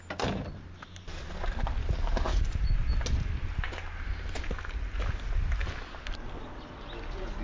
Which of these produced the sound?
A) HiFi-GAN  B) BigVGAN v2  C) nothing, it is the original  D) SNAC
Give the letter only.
C